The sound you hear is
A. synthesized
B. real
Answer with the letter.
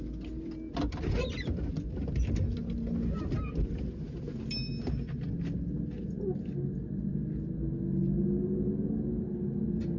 B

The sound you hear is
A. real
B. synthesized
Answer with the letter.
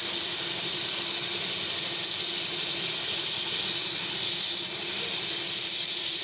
A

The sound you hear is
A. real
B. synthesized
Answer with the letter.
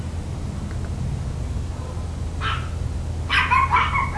A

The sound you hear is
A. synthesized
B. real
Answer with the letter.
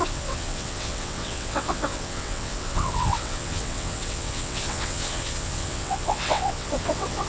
A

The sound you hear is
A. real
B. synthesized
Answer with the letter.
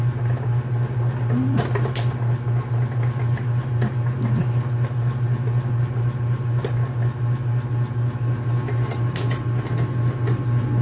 A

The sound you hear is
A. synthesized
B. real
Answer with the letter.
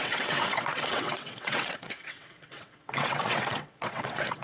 A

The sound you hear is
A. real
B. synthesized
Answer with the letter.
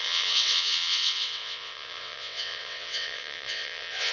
B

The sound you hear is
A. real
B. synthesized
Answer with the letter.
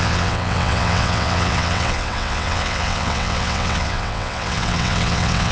B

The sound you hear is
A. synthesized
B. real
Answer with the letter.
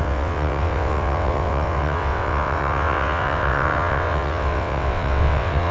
A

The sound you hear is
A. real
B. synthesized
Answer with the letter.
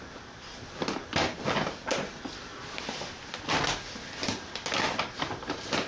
A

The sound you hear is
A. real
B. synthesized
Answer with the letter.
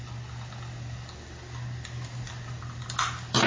A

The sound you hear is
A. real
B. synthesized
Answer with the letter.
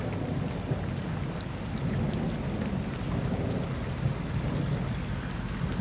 A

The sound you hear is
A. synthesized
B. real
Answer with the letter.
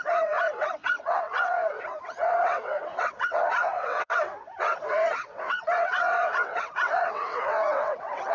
A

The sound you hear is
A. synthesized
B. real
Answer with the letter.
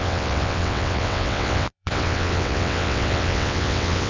A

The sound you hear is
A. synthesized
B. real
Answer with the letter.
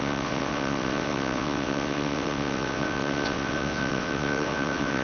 A